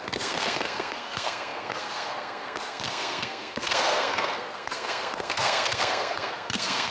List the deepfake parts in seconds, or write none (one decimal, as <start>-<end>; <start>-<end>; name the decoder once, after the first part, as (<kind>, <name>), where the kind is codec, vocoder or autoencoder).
0.0-6.9 (codec, SNAC)